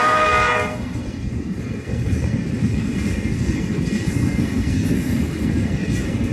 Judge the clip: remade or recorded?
remade